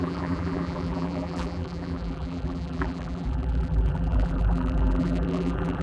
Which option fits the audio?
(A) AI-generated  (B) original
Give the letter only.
A